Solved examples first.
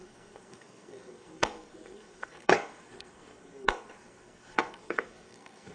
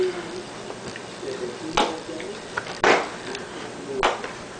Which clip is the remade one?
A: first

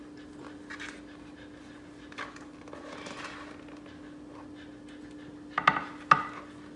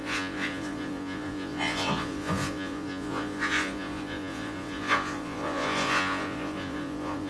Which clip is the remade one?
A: second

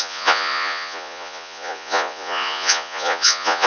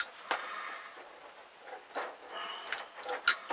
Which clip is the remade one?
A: first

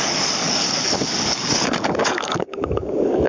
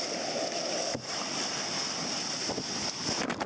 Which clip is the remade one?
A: first